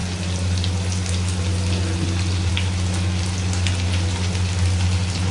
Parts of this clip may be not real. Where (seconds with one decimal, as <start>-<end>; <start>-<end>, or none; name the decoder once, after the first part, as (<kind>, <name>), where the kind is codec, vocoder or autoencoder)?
none